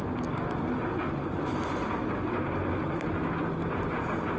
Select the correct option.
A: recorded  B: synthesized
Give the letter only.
A